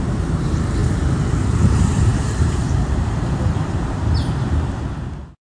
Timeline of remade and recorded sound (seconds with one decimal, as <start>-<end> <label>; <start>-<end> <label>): 0.0-0.8 remade; 0.8-1.3 recorded; 1.3-5.4 remade